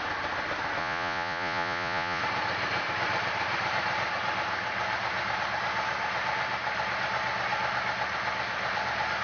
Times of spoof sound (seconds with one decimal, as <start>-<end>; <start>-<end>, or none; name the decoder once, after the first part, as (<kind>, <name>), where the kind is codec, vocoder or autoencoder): 0.8-2.2 (vocoder, Vocos)